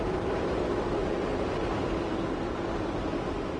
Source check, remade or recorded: recorded